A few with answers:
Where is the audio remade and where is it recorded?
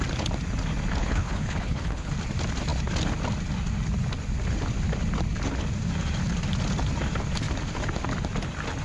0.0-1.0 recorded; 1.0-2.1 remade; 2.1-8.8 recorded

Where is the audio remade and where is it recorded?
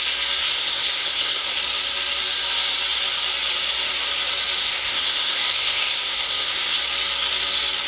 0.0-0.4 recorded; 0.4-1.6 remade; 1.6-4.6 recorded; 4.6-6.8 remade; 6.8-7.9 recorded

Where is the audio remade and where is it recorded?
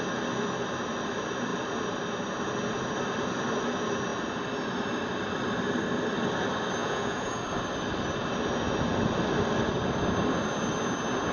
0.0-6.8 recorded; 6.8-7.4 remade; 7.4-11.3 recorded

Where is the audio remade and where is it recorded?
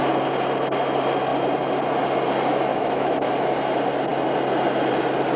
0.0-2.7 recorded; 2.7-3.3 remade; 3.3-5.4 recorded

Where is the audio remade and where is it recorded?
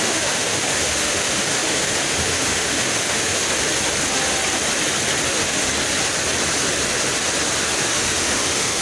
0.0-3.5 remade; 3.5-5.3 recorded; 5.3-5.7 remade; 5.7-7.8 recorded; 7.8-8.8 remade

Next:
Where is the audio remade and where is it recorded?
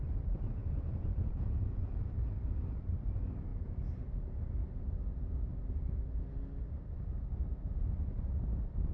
0.0-0.6 recorded; 0.6-2.1 remade; 2.1-8.9 recorded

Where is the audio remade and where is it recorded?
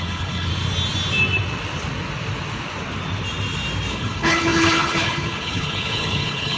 0.0-0.5 remade; 0.5-3.9 recorded; 3.9-6.6 remade